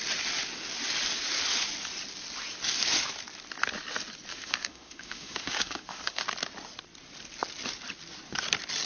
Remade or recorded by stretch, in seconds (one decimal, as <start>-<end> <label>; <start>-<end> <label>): 0.0-4.3 recorded; 4.3-6.2 remade; 6.2-8.9 recorded